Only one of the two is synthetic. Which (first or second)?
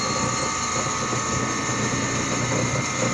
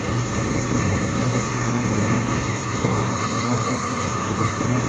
second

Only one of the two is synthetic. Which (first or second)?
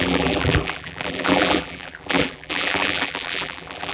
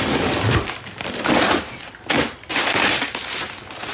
first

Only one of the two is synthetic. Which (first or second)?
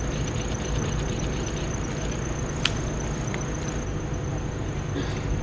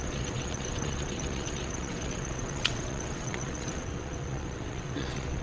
second